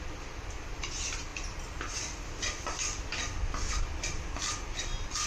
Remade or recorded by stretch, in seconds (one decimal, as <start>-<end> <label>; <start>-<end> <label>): 0.0-5.3 recorded